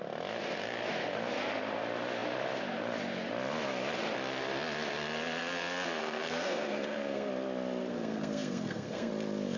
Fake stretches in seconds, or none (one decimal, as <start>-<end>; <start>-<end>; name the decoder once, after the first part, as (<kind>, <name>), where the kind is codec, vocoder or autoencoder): 6.0-7.3 (codec, SNAC); 7.8-9.1